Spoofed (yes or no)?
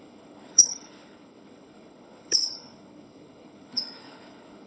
yes